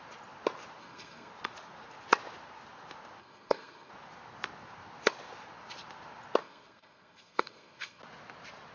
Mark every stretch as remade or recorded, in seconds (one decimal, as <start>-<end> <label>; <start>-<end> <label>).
0.0-0.8 recorded; 0.8-1.3 remade; 1.3-3.2 recorded; 3.2-3.9 remade; 3.9-6.4 recorded; 6.4-8.0 remade; 8.0-8.7 recorded